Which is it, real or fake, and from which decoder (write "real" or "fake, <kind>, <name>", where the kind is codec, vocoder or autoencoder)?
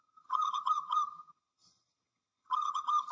fake, vocoder, HiFi-GAN